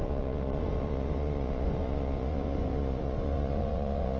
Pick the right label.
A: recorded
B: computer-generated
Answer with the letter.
B